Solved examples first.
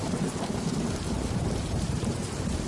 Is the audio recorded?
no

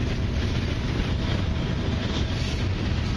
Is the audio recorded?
yes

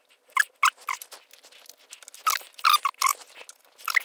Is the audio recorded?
yes